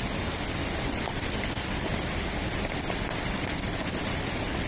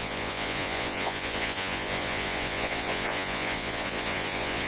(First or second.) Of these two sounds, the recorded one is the first